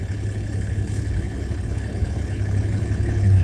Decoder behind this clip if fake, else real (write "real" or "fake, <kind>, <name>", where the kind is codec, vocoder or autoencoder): fake, codec, HILCodec